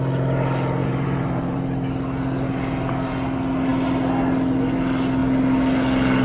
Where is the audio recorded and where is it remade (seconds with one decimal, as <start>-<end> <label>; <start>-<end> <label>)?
0.0-0.8 recorded; 0.8-1.6 remade; 1.6-6.2 recorded

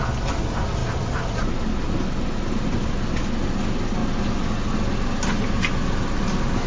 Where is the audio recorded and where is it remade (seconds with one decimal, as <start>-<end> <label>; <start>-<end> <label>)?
0.0-6.7 recorded

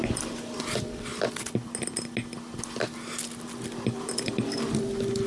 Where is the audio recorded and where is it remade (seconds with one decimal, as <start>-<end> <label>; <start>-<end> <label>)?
0.0-5.3 recorded

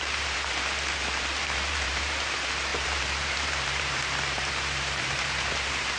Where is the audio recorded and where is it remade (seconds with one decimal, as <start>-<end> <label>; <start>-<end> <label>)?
0.0-6.0 remade